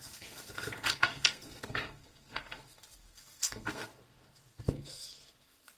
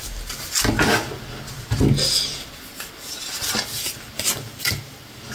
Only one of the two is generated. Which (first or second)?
first